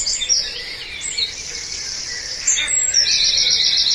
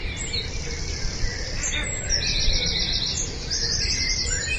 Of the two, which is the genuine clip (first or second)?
first